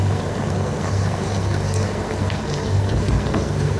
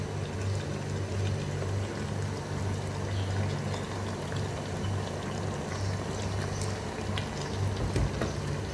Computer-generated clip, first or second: first